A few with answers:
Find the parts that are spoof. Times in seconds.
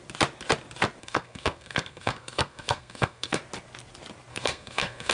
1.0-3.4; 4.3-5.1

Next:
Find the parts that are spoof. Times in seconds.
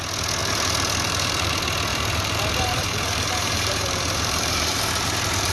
0.4-1.5; 1.9-5.5